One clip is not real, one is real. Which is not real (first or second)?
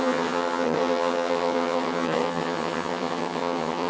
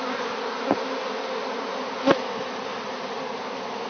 first